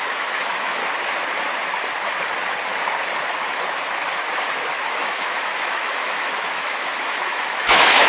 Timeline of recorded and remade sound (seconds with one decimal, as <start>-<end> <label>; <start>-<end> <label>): 0.0-0.8 remade; 0.8-4.9 recorded; 4.9-8.1 remade